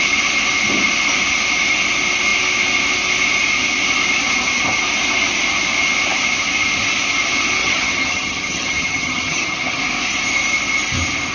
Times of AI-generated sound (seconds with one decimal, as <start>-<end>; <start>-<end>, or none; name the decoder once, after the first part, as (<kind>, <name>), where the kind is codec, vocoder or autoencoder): 7.6-9.8 (vocoder, HiFi-GAN)